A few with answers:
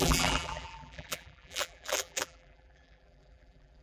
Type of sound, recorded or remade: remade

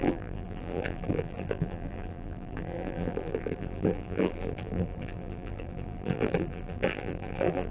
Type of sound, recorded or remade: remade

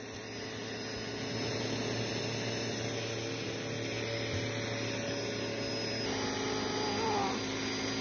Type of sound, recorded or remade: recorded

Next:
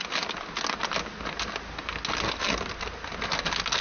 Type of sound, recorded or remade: recorded